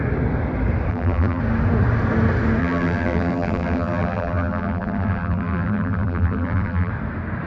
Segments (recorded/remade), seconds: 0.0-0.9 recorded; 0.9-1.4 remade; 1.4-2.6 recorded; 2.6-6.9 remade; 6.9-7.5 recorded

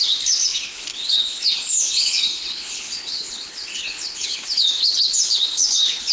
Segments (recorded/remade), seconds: 0.0-6.1 remade

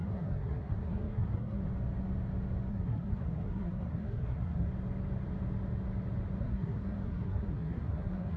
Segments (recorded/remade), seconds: 0.0-1.6 remade; 1.6-2.7 recorded; 2.7-4.7 remade; 4.7-6.4 recorded; 6.4-8.4 remade

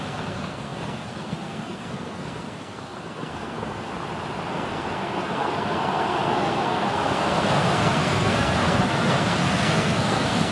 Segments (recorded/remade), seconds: 0.0-3.9 remade; 3.9-4.5 recorded; 4.5-10.5 remade

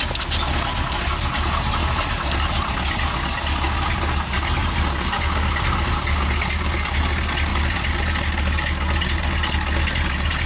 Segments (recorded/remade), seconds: 0.0-7.5 recorded; 7.5-8.1 remade; 8.1-10.5 recorded

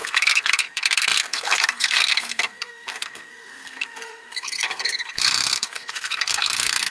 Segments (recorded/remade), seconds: 0.0-6.9 remade

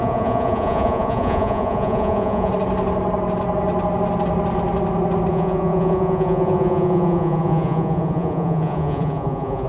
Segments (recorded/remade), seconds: 0.0-2.5 remade; 2.5-5.3 recorded; 5.3-9.7 remade

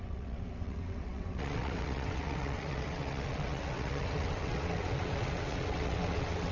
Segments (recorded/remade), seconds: 0.0-6.5 remade